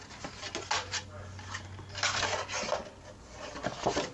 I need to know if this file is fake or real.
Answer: real